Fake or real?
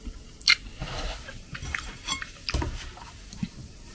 real